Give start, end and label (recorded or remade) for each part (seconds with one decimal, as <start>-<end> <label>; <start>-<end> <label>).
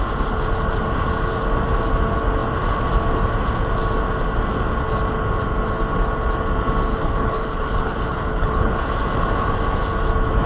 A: 0.0-6.9 recorded; 6.9-8.7 remade; 8.7-10.5 recorded